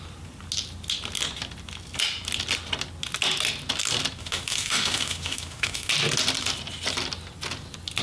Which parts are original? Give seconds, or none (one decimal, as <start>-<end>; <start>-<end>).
0.0-4.2; 5.9-8.0